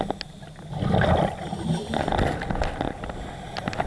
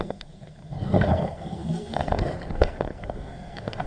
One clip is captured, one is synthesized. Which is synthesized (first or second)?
second